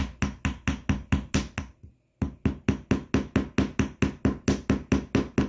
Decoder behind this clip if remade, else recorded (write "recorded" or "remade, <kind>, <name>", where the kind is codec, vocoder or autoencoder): recorded